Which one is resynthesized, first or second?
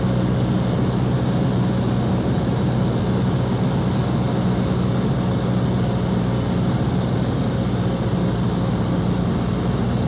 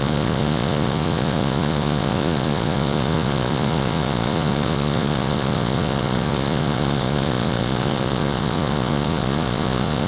second